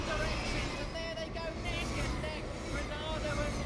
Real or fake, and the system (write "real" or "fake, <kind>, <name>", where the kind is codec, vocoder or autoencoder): real